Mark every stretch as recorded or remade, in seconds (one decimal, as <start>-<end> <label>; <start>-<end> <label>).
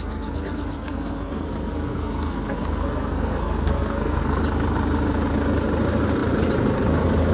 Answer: 0.0-4.4 remade; 4.4-7.3 recorded